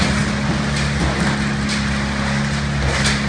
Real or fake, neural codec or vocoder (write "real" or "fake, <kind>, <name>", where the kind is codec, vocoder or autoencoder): real